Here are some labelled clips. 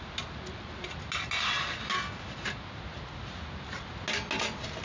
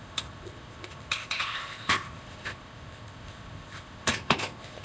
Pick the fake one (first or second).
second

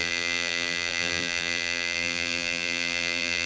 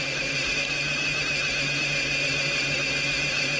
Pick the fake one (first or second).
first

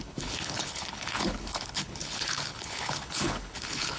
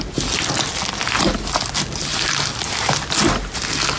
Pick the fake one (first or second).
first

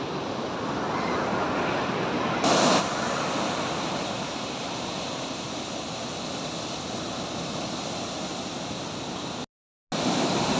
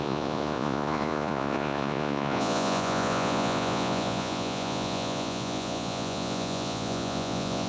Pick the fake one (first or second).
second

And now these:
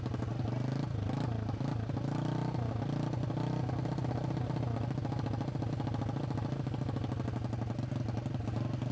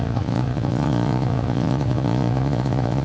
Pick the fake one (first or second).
second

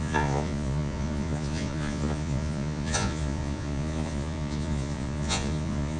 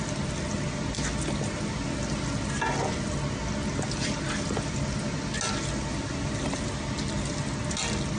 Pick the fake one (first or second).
first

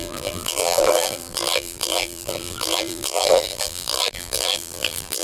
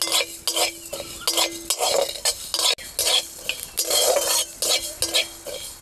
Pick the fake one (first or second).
first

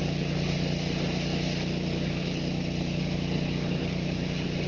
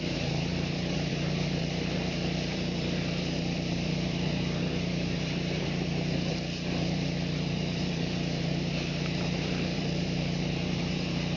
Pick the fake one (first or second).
second